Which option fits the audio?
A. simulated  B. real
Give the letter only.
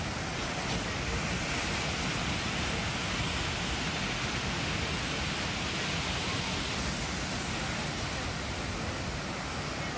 B